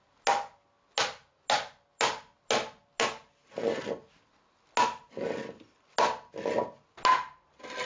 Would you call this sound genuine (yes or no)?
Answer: yes